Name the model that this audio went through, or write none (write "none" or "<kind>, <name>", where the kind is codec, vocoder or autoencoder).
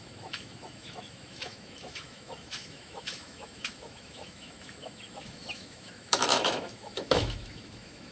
autoencoder, DAC-VAE